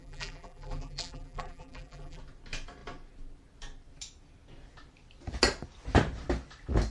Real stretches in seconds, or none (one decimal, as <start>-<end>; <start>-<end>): 2.2-6.9

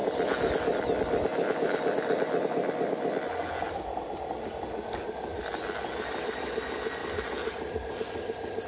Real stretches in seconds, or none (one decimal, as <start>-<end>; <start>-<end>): 0.8-1.3; 2.4-7.0; 7.9-8.7

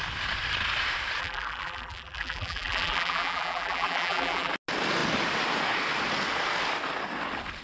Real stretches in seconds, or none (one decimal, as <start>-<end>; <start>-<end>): 0.0-1.2; 4.5-7.6

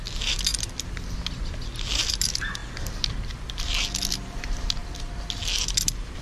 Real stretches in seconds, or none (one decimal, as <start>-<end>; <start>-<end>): 0.0-6.2

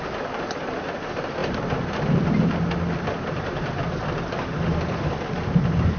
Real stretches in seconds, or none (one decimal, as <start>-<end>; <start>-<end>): 0.0-1.4; 2.4-4.7

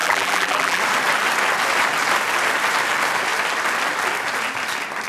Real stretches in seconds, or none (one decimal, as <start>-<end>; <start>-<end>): 0.8-5.1

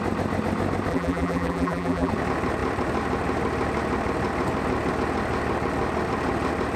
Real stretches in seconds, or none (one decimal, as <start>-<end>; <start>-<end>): 0.0-0.9; 2.1-6.8